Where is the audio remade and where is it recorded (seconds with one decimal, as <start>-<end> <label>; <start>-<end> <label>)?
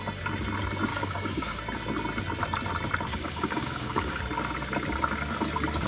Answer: 0.0-0.9 recorded; 0.9-1.6 remade; 1.6-3.1 recorded; 3.1-4.2 remade; 4.2-5.9 recorded